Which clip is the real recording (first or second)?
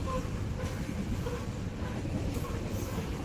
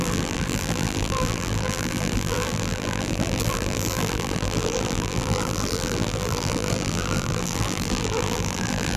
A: first